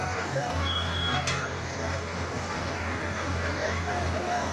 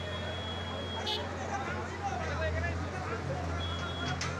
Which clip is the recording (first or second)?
second